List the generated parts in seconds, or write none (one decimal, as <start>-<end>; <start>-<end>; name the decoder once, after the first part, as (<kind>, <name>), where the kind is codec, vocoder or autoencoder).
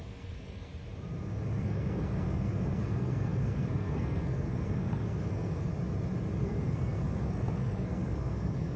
0.0-0.7 (codec, SNAC); 1.6-5.7; 6.4-8.8